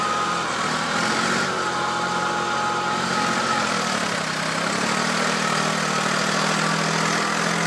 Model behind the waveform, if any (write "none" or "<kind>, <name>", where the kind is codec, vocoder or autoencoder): none